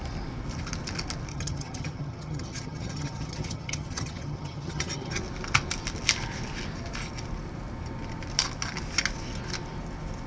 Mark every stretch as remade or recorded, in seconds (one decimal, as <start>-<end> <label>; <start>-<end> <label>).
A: 0.0-1.3 recorded; 1.3-5.2 remade; 5.2-10.3 recorded